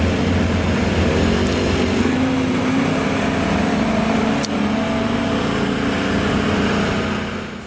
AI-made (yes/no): no